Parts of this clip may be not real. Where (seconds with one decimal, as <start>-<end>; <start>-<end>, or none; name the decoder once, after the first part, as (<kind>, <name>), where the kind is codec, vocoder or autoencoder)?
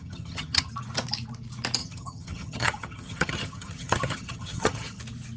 0.0-0.7 (vocoder, HiFi-GAN); 1.8-5.0